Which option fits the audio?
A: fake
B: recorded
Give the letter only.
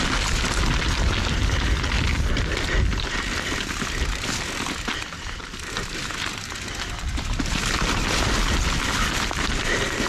B